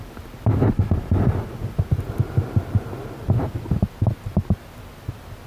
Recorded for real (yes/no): yes